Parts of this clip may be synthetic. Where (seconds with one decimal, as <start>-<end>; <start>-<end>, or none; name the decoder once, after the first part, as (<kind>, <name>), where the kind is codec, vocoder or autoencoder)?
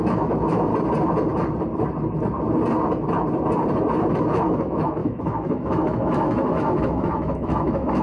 0.0-0.7 (autoencoder, DAC-VAE); 4.1-8.0